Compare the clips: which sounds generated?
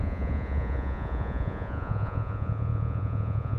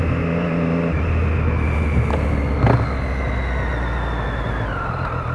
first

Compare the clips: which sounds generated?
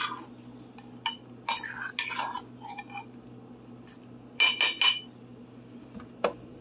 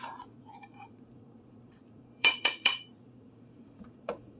second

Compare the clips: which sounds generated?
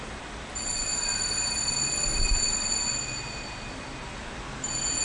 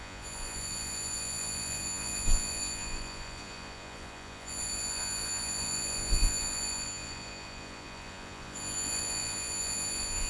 second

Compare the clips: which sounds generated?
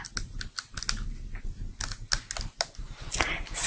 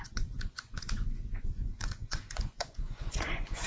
second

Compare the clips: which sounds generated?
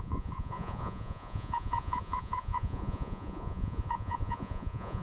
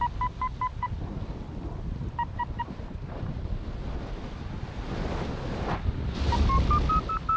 first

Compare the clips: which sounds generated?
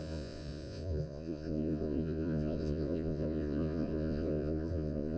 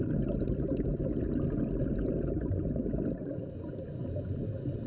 first